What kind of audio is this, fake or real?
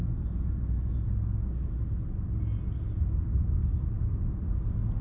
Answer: real